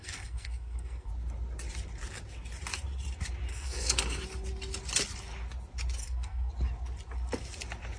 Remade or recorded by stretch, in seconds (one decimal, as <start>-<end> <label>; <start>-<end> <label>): 0.0-1.1 remade; 1.1-3.5 recorded; 3.5-4.2 remade; 4.2-6.0 recorded; 6.0-6.5 remade; 6.5-8.0 recorded